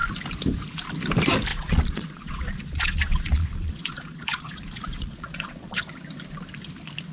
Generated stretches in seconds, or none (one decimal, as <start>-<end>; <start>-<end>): 1.5-5.8